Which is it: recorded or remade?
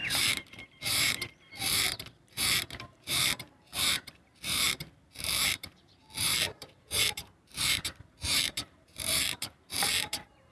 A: remade